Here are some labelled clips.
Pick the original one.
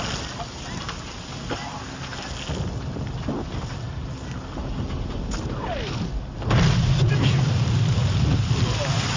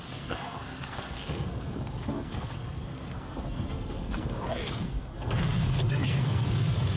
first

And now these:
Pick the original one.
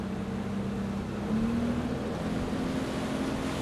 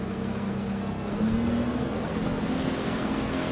first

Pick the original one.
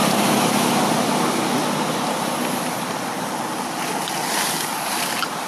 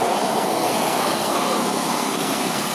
first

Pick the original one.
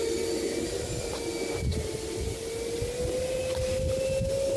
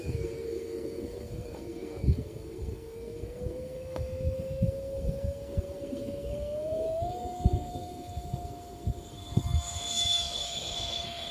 first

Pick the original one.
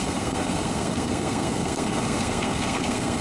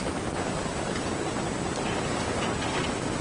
second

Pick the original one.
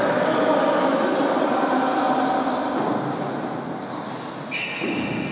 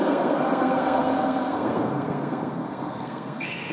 first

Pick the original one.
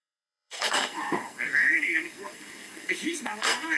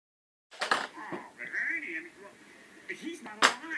second